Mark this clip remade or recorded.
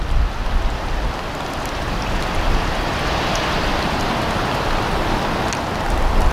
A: recorded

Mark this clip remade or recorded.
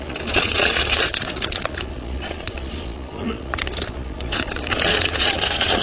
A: remade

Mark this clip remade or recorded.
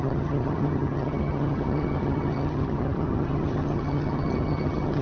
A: remade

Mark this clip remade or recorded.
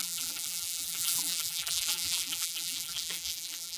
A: remade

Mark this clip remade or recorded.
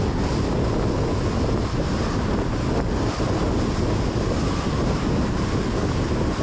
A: recorded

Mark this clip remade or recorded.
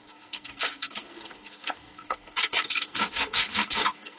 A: remade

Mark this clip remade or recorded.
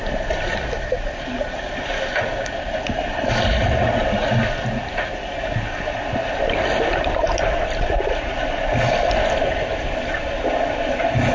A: recorded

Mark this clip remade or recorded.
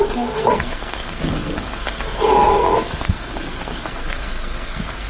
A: remade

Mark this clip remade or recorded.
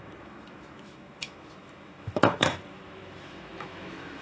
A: remade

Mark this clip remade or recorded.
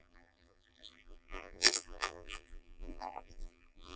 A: remade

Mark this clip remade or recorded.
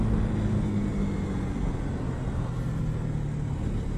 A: recorded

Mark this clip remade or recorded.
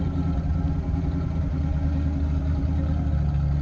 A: recorded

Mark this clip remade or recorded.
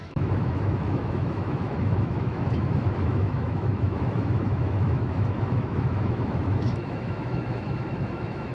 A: remade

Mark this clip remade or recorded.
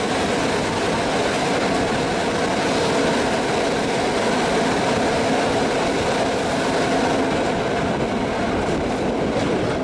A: recorded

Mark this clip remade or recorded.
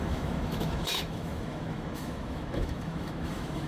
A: remade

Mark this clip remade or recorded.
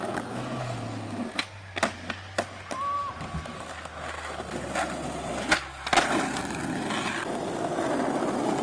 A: recorded